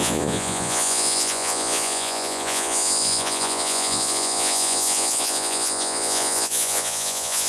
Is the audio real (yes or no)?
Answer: no